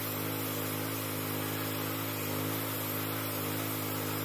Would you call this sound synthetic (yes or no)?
no